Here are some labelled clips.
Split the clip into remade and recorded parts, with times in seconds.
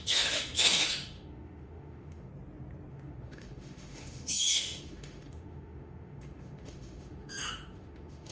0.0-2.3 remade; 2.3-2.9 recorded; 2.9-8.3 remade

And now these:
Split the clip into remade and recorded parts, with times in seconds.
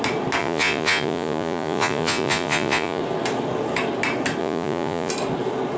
0.0-0.4 recorded; 0.4-3.0 remade; 3.0-4.4 recorded; 4.4-5.1 remade; 5.1-5.8 recorded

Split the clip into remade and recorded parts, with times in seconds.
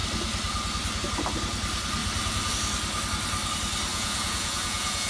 0.0-3.9 recorded; 3.9-5.1 remade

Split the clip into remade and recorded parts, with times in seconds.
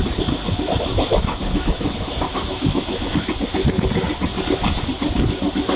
0.0-1.1 recorded; 1.1-3.3 remade; 3.3-5.8 recorded